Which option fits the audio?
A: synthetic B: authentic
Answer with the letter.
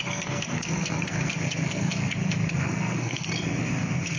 A